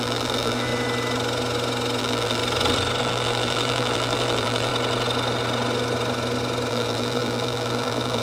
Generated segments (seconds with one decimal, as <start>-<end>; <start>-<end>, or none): 0.0-0.7; 2.0-2.4; 3.0-4.7; 6.7-8.2